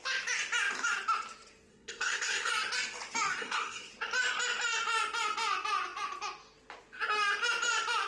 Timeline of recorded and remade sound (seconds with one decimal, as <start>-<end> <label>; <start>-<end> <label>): 0.0-1.7 recorded; 1.7-2.5 remade; 2.5-3.4 recorded; 3.4-3.9 remade; 3.9-8.1 recorded